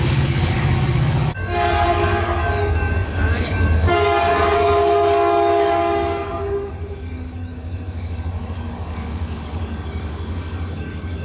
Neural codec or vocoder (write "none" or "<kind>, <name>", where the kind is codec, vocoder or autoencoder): codec, DAC